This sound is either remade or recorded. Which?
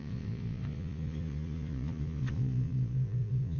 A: remade